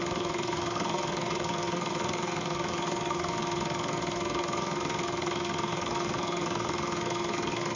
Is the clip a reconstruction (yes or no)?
yes